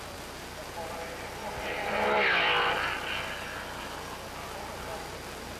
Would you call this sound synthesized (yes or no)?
no